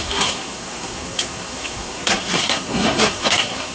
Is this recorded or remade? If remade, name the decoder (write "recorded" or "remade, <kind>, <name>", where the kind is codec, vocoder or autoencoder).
remade, codec, SNAC